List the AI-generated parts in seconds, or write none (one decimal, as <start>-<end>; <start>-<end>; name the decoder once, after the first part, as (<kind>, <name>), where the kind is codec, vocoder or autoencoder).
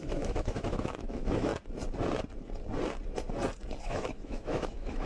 0.0-1.5 (autoencoder, DAC-VAE); 3.8-5.1